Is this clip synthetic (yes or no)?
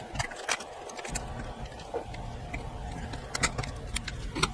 no